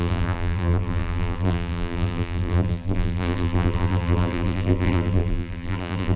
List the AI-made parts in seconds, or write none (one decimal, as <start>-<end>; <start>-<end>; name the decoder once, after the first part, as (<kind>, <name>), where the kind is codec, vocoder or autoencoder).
0.0-6.2 (vocoder, BigVGAN v2)